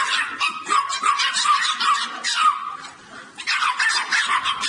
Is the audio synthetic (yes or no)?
no